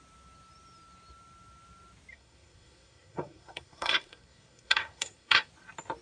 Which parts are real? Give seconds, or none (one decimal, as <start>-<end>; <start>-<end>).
0.0-2.1; 5.5-6.0